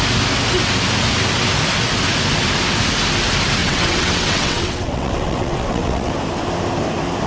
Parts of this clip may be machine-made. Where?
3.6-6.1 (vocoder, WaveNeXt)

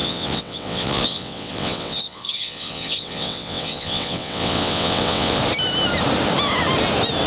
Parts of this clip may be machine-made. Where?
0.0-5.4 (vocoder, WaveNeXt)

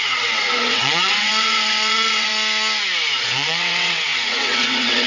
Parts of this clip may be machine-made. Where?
0.0-2.3 (vocoder, WaveNeXt); 3.2-5.1

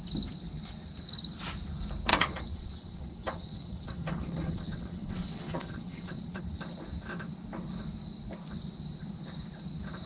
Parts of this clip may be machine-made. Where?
2.1-6.4 (vocoder, WaveNeXt)